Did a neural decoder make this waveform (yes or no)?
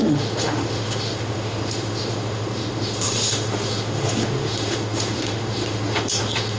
yes